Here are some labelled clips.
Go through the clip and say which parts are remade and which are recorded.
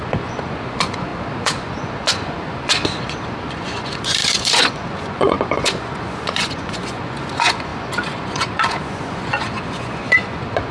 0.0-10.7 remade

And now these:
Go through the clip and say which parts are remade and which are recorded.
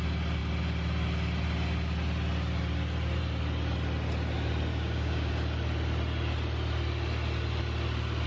0.0-4.7 recorded; 4.7-5.3 remade; 5.3-8.3 recorded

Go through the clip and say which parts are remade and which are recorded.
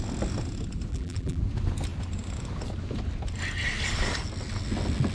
0.0-0.9 recorded; 0.9-1.4 remade; 1.4-5.1 recorded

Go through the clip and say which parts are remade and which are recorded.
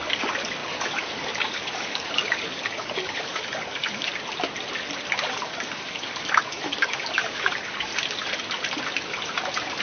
0.0-4.1 remade; 4.1-5.2 recorded; 5.2-7.9 remade; 7.9-9.8 recorded